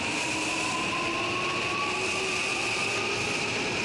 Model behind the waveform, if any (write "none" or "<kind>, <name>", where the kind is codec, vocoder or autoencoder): none